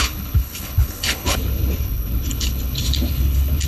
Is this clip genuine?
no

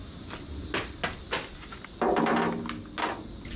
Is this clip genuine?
yes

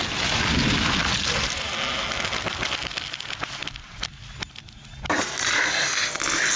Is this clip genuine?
yes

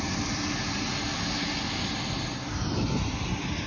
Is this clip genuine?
yes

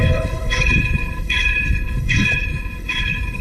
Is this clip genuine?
no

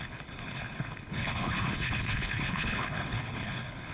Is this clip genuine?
no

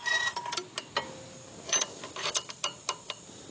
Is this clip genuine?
yes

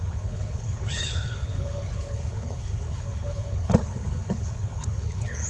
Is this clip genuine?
no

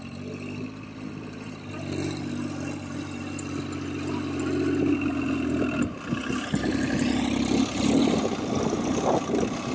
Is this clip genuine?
yes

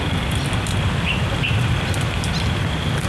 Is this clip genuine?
yes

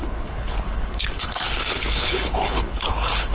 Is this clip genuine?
no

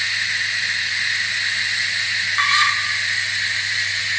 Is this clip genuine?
yes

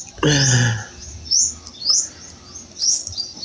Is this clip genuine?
yes